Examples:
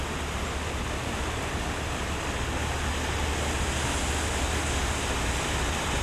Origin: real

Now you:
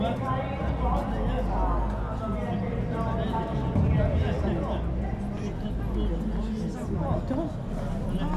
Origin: real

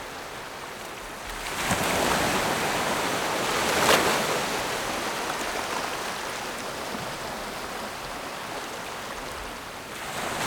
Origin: real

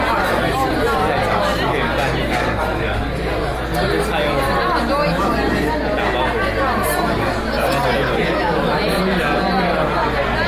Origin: real